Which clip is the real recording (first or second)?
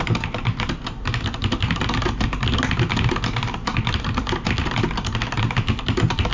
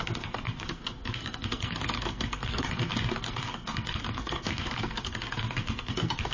first